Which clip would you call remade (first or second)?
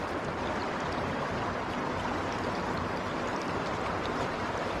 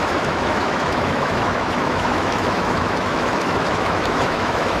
second